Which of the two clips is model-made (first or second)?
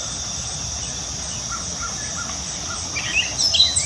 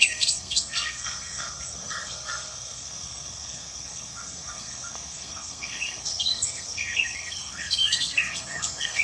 second